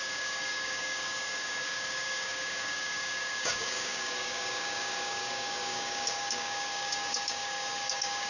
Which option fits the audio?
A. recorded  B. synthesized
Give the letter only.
B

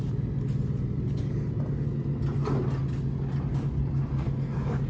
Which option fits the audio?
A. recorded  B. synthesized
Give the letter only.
A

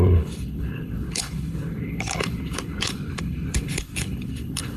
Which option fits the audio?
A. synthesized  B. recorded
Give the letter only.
A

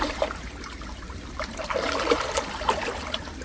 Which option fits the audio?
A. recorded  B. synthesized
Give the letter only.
B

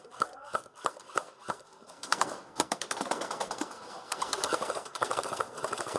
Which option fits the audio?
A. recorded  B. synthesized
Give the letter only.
B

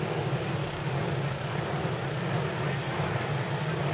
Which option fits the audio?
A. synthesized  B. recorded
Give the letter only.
B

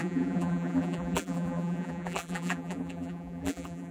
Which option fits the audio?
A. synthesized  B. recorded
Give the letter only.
A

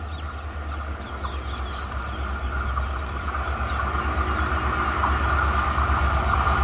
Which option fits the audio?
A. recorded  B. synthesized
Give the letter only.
A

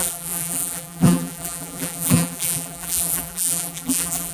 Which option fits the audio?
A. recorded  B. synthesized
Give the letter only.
B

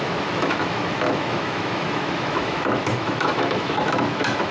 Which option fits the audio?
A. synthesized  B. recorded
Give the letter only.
A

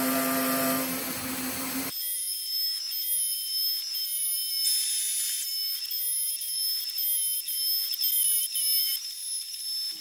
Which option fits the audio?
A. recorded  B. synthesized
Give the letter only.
A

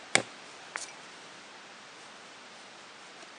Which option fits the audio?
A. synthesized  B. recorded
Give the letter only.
B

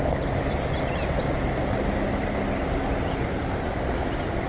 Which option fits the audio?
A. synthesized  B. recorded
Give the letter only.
B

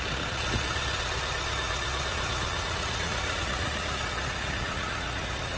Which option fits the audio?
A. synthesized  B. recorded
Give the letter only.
A